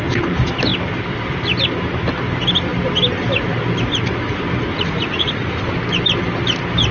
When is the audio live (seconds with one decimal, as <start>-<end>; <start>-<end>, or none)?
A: 0.0-4.7; 5.6-6.9

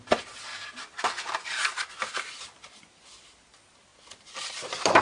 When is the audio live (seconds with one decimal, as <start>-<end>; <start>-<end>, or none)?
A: 0.0-0.5; 2.9-5.0

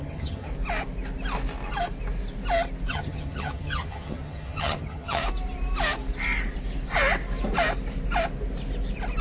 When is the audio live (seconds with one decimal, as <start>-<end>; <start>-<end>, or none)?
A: 0.5-2.9; 5.2-9.2